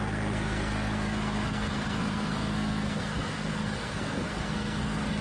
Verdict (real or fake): fake